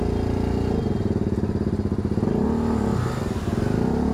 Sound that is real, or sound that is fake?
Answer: real